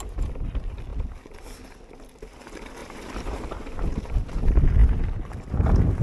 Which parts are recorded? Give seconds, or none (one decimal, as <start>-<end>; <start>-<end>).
0.0-2.8; 3.5-6.0